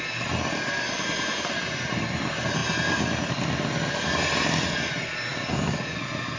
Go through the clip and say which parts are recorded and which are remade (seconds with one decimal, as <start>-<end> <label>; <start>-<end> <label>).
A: 0.0-6.4 recorded